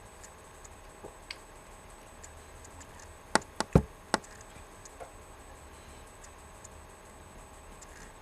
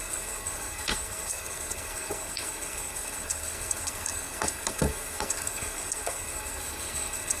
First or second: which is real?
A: first